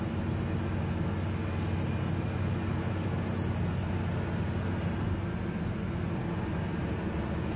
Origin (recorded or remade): recorded